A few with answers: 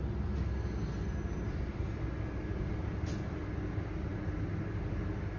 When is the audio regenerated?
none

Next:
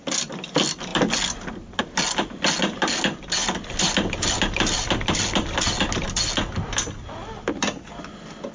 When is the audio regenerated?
3.4-5.2 (vocoder, BigVGAN v2)